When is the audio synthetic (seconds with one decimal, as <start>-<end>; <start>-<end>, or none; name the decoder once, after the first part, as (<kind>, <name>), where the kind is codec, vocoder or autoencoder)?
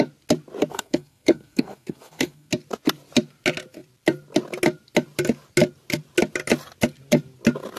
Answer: 0.7-2.5 (codec, SNAC)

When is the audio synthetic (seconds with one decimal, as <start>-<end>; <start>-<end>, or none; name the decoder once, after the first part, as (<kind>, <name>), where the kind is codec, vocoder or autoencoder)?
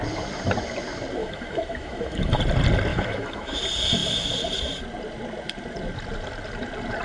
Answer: 1.2-2.4 (autoencoder, DAC-VAE); 2.9-3.6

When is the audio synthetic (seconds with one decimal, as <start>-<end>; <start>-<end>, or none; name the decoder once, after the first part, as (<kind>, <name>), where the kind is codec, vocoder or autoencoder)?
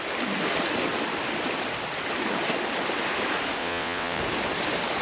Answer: 3.6-4.2 (vocoder, WaveNeXt)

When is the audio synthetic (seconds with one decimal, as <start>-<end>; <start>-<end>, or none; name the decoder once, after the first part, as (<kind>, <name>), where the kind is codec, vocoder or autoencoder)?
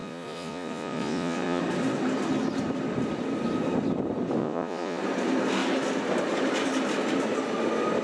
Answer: 0.0-1.6 (vocoder, Vocos); 4.4-5.0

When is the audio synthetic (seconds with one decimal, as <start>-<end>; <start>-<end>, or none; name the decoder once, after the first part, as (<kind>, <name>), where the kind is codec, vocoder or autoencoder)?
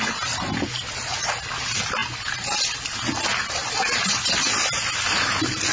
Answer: none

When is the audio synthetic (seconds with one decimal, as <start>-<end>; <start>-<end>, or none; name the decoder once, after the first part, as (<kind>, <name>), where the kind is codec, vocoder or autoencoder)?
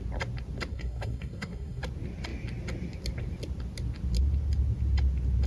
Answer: 0.7-1.8 (codec, SNAC)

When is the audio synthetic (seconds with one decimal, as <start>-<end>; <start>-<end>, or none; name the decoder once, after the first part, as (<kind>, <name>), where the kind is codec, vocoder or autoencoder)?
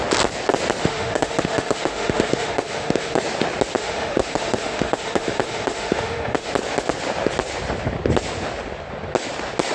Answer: 0.8-3.2 (autoencoder, DAC-VAE); 3.7-6.5